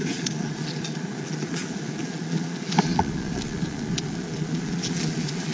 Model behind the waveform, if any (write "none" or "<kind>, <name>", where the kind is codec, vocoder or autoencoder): vocoder, Vocos